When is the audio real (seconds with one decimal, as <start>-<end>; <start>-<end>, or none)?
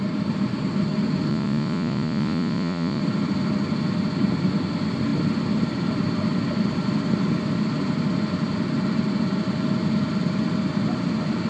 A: 0.0-1.3; 3.0-11.5